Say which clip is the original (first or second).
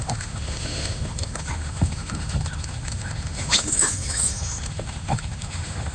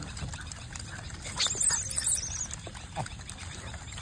second